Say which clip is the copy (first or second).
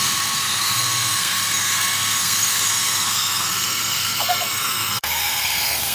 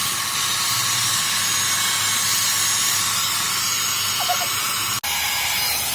first